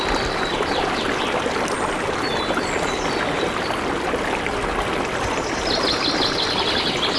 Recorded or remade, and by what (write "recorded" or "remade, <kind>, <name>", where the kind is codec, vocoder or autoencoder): recorded